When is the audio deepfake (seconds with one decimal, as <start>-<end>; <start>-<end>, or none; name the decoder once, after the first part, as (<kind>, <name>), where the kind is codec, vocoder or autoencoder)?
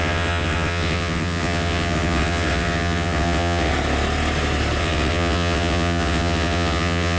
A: 0.0-3.7 (vocoder, WaveNeXt); 4.8-7.2